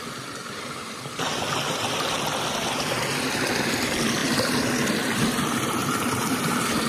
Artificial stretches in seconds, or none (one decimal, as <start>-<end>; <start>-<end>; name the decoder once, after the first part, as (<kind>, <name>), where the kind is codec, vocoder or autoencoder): 5.8-6.5 (vocoder, BigVGAN v2)